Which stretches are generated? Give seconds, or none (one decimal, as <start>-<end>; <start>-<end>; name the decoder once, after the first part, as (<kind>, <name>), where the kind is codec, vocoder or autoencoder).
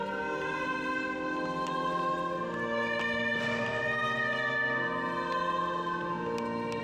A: none